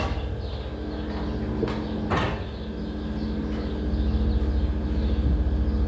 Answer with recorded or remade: recorded